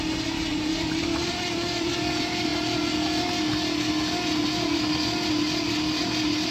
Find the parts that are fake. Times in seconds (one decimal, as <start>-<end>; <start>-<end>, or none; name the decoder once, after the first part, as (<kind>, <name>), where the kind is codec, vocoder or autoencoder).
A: 0.5-1.9 (vocoder, BigVGAN v2)